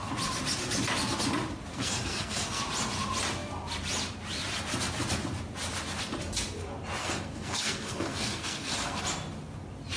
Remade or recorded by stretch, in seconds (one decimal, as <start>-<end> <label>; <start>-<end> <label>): 0.0-1.7 recorded; 1.7-2.6 remade; 2.6-7.0 recorded; 7.0-9.0 remade; 9.0-10.0 recorded

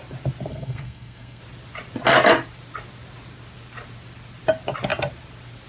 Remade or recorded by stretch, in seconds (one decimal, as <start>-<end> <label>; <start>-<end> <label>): 0.0-0.5 recorded; 0.5-1.4 remade; 1.4-5.7 recorded

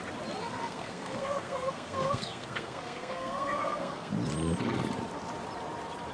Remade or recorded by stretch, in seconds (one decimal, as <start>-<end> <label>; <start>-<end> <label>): 0.0-0.4 recorded; 0.4-4.1 remade; 4.1-6.1 recorded

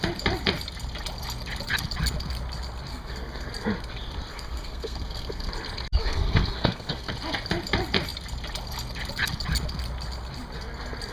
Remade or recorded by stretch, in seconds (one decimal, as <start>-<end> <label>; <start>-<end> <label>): 0.0-2.9 recorded; 2.9-3.5 remade; 3.5-4.3 recorded; 4.3-5.5 remade; 5.5-6.0 recorded; 6.0-7.1 remade; 7.1-11.1 recorded